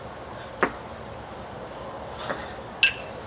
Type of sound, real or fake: real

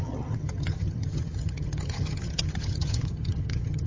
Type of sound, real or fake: fake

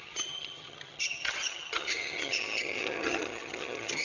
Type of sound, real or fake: fake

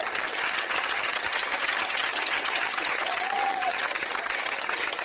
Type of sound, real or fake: fake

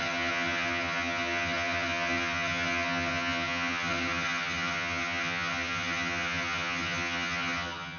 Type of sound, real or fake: fake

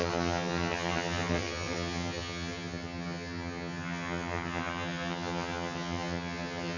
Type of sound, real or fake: fake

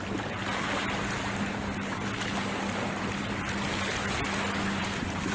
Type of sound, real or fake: real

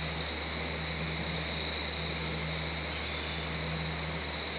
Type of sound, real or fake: real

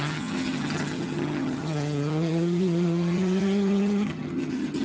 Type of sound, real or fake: fake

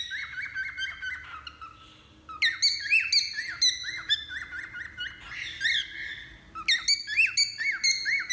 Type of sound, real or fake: real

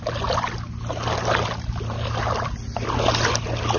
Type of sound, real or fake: real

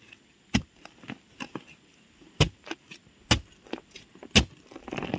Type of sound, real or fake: real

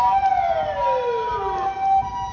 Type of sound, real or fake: real